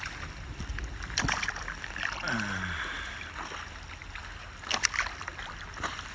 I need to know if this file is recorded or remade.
recorded